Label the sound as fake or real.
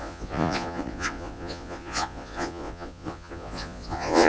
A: fake